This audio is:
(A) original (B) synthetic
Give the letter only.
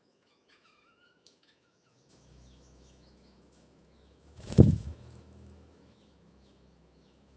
B